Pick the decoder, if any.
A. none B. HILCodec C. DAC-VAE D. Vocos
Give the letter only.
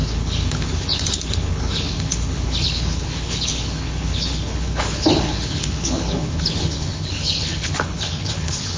B